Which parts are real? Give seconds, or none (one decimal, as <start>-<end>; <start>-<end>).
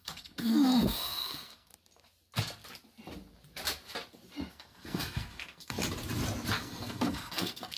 1.7-4.5; 5.8-6.5